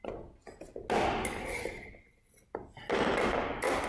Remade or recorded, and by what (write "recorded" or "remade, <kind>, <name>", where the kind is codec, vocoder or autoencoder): recorded